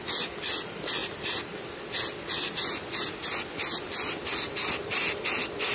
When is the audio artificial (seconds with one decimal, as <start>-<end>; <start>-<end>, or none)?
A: none